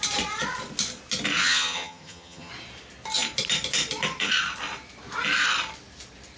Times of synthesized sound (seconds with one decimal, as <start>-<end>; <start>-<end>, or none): 1.4-2.5